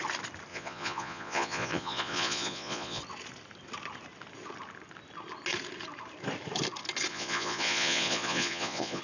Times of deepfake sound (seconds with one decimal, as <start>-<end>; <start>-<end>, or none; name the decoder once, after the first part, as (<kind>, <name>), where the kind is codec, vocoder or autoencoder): 0.5-3.0 (vocoder, Vocos); 7.1-9.0